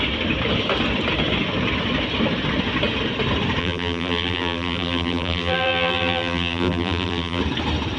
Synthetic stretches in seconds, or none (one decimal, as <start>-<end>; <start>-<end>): 3.6-7.4